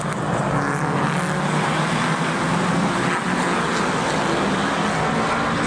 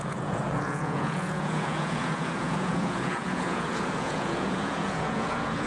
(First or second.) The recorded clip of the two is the first